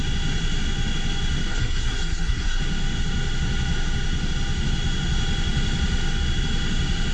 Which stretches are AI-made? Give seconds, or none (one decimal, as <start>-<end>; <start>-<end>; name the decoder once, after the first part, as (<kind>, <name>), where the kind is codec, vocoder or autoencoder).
1.5-2.6 (codec, SNAC)